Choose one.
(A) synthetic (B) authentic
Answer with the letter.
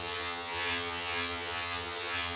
A